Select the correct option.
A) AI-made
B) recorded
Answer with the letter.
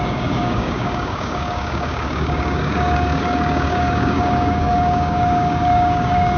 A